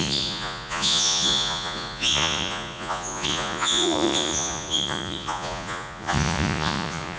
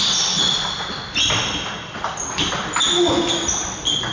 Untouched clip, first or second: second